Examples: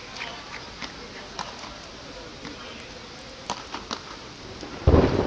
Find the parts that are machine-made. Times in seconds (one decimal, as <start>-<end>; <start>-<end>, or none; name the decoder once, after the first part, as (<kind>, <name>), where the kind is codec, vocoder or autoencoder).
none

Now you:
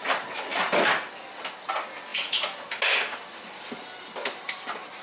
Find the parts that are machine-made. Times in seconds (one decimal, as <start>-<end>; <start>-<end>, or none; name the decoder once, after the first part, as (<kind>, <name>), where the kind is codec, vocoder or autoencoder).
none

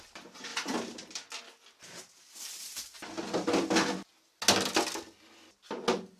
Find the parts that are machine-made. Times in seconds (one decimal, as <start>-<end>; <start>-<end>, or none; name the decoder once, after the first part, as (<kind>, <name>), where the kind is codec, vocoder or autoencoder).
none